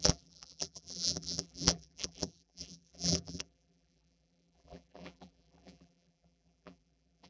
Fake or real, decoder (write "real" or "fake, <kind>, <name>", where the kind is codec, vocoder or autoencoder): fake, vocoder, BigVGAN v2